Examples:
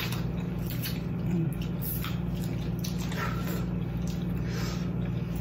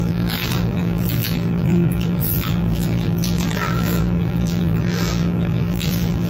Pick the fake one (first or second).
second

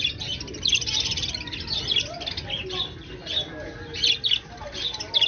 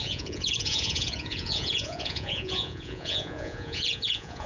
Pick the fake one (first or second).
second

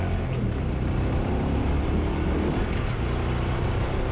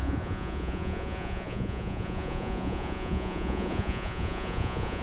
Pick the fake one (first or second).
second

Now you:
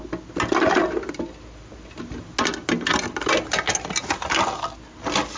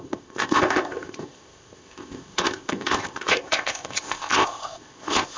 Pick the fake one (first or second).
second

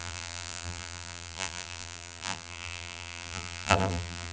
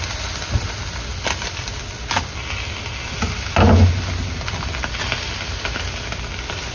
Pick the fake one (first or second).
first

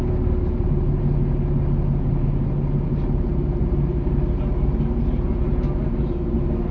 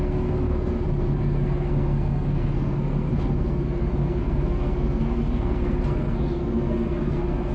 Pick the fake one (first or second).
second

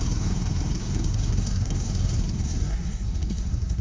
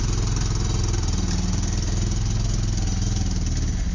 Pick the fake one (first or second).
first